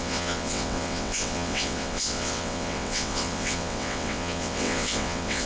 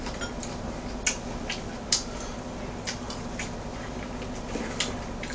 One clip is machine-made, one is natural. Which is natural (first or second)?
second